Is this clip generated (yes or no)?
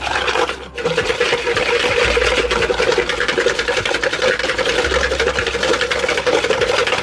no